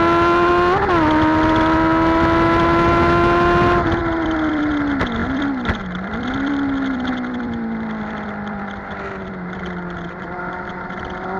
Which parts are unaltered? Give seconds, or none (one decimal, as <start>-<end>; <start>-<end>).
0.0-4.0; 4.7-5.2; 9.6-11.4